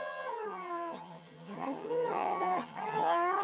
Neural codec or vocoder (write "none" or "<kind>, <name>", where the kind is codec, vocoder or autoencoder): vocoder, HiFi-GAN